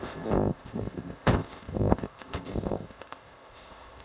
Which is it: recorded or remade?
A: remade